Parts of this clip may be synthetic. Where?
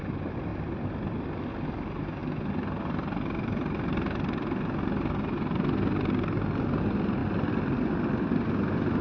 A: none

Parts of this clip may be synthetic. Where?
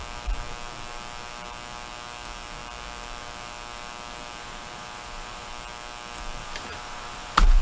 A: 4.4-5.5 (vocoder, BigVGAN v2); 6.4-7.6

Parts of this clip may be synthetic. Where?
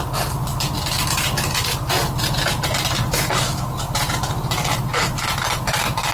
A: none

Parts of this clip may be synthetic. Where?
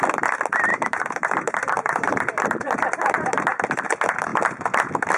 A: 0.7-3.8 (vocoder, BigVGAN v2)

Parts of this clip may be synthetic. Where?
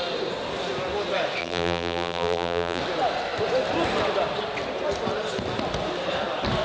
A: 1.4-2.8 (vocoder, BigVGAN v2)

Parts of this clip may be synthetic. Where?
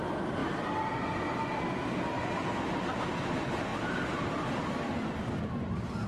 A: none